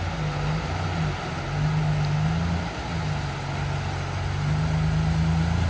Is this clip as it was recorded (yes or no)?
yes